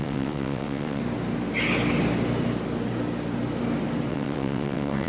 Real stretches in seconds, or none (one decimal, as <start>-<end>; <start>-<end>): 1.0-4.1